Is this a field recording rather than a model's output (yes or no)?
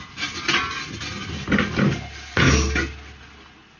yes